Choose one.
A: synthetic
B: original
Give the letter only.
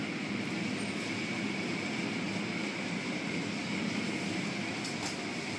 B